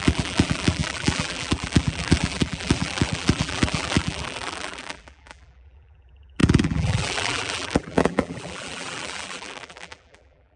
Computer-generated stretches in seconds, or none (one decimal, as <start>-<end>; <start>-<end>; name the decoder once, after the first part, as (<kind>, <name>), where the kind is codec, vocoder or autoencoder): 0.0-10.6 (vocoder, BigVGAN v2)